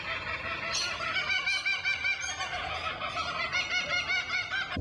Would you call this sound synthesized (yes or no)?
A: no